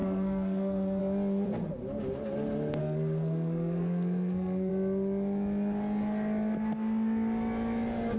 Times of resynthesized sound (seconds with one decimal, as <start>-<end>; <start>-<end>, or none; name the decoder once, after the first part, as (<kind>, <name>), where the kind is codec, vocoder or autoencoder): 0.0-1.0 (codec, SNAC); 2.8-4.7